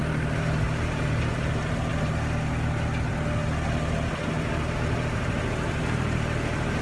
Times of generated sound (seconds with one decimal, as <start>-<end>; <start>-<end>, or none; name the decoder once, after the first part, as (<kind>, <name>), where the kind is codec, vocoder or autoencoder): 0.0-1.9 (vocoder, BigVGAN v2); 4.6-6.8